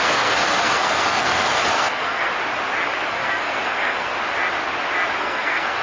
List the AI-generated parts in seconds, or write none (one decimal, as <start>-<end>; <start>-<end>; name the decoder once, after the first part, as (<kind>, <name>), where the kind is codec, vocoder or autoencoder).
0.0-2.3 (codec, SNAC); 3.1-4.1; 5.2-5.8

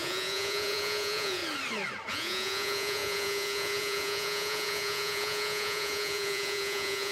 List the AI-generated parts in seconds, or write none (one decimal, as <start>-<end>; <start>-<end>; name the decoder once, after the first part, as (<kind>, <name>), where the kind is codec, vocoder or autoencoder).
0.0-1.4 (vocoder, Vocos); 2.1-7.1

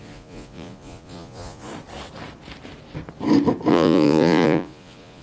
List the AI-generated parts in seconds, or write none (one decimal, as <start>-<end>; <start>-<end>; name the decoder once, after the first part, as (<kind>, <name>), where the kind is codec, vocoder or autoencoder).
0.0-1.7 (vocoder, Vocos); 3.7-5.2

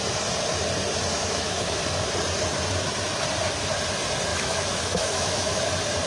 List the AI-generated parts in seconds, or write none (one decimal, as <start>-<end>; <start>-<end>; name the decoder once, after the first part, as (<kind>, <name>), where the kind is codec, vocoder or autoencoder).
1.1-1.8 (autoencoder, DAC-VAE); 4.3-5.6

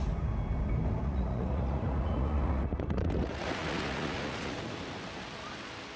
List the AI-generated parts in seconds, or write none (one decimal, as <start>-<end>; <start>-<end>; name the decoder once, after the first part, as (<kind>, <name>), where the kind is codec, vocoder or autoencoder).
1.0-4.6 (vocoder, Vocos)

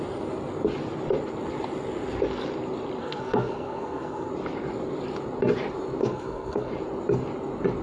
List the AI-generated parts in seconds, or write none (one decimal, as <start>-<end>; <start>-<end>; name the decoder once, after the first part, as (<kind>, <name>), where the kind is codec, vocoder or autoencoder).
3.0-4.3 (codec, SNAC); 6.0-6.7

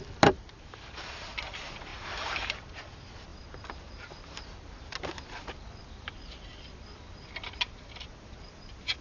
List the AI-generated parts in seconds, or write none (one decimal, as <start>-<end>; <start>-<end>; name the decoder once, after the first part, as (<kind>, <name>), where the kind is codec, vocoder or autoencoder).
0.0-3.3 (vocoder, BigVGAN v2); 6.8-9.0